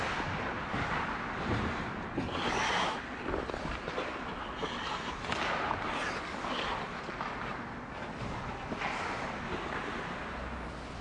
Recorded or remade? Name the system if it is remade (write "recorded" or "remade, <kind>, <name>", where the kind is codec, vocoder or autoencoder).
recorded